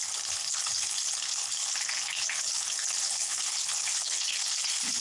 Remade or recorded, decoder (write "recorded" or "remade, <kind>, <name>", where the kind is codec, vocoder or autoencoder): remade, codec, HILCodec